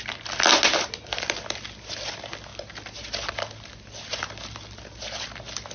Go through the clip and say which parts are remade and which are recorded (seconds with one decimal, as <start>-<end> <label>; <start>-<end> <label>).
0.0-5.7 recorded

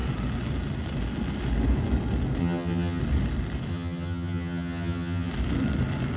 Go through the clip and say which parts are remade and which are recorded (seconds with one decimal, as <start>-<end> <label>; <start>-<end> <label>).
0.0-2.4 recorded; 2.4-3.0 remade; 3.0-3.7 recorded; 3.7-5.3 remade; 5.3-6.2 recorded